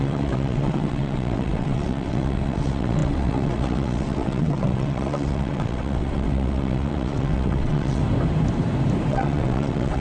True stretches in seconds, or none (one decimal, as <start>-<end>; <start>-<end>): 8.0-9.1